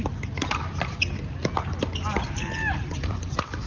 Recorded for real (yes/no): yes